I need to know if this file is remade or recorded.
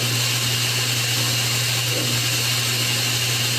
recorded